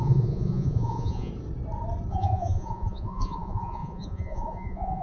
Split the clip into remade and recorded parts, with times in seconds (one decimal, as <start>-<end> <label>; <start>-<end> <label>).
0.0-1.3 remade; 1.3-2.1 recorded; 2.1-5.0 remade